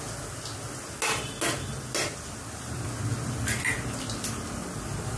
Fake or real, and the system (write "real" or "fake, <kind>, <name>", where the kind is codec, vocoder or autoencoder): real